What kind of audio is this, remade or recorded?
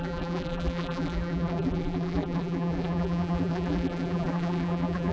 remade